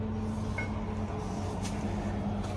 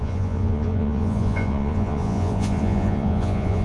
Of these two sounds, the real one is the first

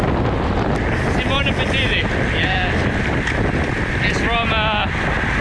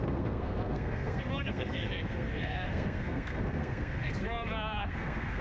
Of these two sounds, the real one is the first